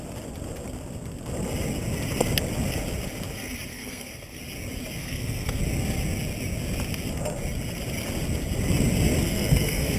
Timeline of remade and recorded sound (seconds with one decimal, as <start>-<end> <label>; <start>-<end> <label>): 0.0-3.7 recorded; 3.7-4.4 remade; 4.4-5.0 recorded; 5.0-5.6 remade; 5.6-9.2 recorded; 9.2-10.0 remade